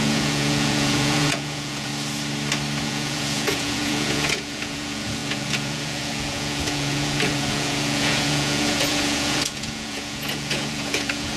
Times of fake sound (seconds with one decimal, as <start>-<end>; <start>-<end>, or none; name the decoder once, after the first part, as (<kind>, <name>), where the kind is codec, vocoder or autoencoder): 0.0-1.9 (vocoder, Vocos); 2.8-11.4